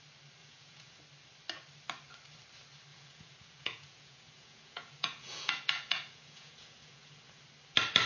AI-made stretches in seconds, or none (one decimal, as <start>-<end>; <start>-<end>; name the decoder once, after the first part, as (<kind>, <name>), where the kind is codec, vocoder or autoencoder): 0.4-1.0 (vocoder, Vocos); 2.9-7.4

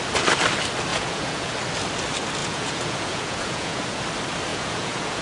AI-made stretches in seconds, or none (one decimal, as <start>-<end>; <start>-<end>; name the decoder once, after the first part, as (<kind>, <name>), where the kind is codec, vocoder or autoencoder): 0.9-1.5 (vocoder, Vocos); 2.4-4.0; 4.5-5.2

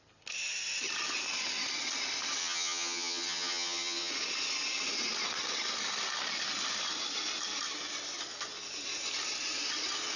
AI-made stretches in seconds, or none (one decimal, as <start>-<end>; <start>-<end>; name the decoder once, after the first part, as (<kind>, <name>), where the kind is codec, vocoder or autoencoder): 2.4-4.1 (vocoder, HiFi-GAN)

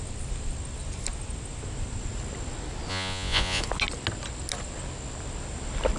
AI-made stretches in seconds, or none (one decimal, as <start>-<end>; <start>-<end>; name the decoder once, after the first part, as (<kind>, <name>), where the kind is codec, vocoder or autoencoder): 2.9-3.6 (vocoder, Vocos)

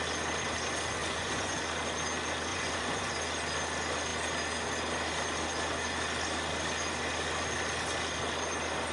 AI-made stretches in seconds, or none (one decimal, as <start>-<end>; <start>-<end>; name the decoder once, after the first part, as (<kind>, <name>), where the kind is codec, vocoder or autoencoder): 1.0-1.6 (vocoder, Vocos); 2.5-3.1

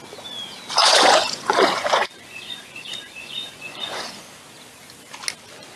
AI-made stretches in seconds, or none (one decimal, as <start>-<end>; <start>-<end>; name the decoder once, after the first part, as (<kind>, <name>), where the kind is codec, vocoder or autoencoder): 0.8-4.3 (vocoder, Vocos)

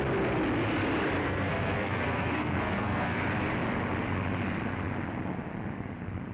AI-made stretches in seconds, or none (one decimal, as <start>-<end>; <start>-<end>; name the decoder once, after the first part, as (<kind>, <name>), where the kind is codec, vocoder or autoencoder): 1.2-3.2 (codec, SNAC)

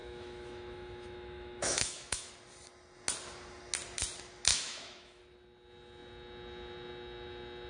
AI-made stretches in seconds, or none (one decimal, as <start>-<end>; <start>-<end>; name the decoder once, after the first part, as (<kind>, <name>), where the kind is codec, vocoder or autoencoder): 0.0-2.3 (autoencoder, DAC-VAE); 4.5-5.2